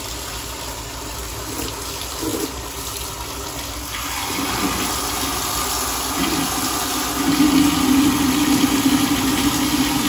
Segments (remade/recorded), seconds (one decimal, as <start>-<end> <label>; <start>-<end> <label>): 0.0-10.1 recorded